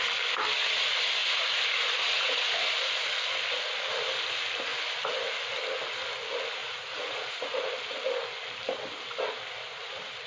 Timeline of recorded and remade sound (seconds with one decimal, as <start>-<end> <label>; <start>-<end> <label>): 0.0-1.2 recorded; 1.2-2.5 remade; 2.5-6.6 recorded; 6.6-7.7 remade; 7.7-10.3 recorded